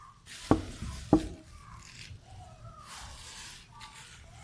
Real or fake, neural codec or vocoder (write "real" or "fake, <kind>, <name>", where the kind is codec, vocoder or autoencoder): real